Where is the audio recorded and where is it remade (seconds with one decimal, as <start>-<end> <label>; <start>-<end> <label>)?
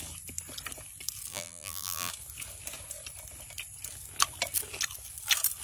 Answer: 0.0-1.3 recorded; 1.3-2.1 remade; 2.1-5.6 recorded